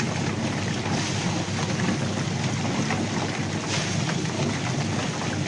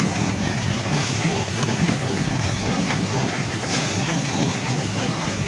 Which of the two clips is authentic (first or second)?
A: first